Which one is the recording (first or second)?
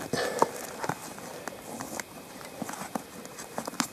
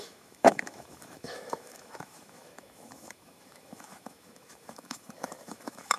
first